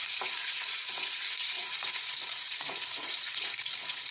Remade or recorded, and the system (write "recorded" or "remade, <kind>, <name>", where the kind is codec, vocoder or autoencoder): remade, vocoder, Vocos